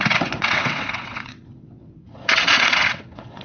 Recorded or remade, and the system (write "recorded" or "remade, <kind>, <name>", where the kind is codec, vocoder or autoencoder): remade, vocoder, WaveNeXt